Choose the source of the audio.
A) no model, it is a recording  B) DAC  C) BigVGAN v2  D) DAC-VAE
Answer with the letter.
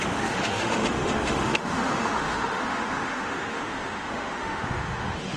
D